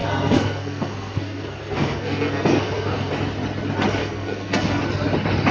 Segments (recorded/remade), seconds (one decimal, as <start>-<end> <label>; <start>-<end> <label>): 0.0-3.1 remade; 3.1-4.0 recorded; 4.0-4.8 remade; 4.8-5.5 recorded